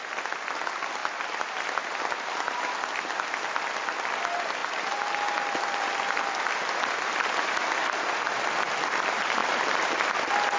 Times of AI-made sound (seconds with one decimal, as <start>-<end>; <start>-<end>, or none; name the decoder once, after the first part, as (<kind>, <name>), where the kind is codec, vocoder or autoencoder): none